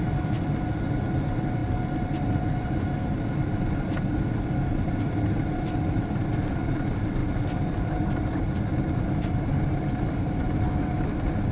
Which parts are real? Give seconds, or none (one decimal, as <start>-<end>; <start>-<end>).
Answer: 0.0-11.5